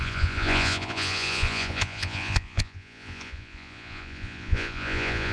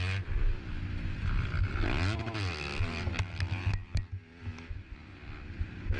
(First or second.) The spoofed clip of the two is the first